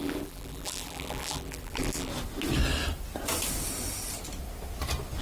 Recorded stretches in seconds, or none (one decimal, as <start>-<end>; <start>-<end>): 2.1-5.2